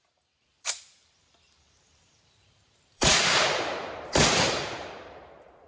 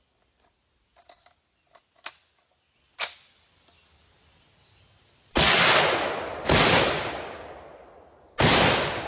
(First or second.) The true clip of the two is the second